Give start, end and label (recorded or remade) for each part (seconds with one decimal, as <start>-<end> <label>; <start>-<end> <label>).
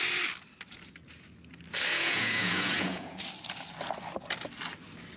0.0-1.9 recorded; 1.9-3.2 remade; 3.2-5.2 recorded